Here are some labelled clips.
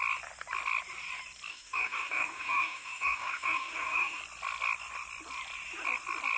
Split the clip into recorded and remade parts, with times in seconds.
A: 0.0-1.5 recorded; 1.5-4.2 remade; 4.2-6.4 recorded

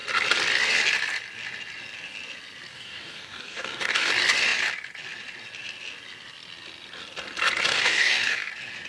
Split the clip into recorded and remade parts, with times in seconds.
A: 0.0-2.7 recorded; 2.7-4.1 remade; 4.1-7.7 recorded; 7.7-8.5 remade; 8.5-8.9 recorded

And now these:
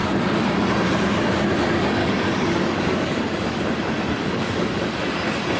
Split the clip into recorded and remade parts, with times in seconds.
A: 0.0-2.0 recorded; 2.0-3.8 remade; 3.8-4.2 recorded; 4.2-5.0 remade; 5.0-5.6 recorded